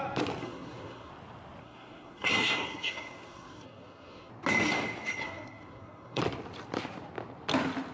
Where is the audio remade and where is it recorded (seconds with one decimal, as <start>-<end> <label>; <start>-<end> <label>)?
0.0-0.4 recorded; 0.4-1.1 remade; 1.1-1.6 recorded; 1.6-4.3 remade; 4.3-5.2 recorded; 5.2-6.2 remade; 6.2-7.9 recorded